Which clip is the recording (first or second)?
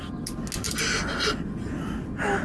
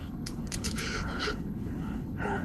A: first